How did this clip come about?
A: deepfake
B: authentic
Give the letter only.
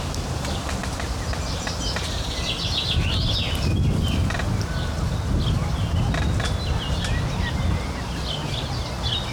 B